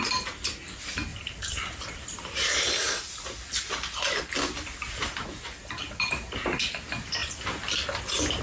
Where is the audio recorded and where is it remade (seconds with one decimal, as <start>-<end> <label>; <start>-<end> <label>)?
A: 0.0-1.1 recorded; 1.1-3.1 remade; 3.1-8.4 recorded